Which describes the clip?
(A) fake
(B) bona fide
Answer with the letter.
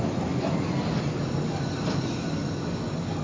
B